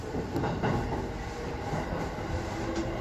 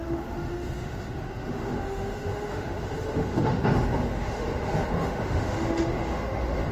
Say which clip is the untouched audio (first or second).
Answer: first